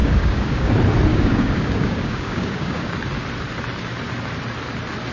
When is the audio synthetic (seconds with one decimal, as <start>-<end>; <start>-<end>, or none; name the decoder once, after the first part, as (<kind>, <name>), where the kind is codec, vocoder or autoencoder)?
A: 0.0-0.7 (codec, DAC); 1.1-2.9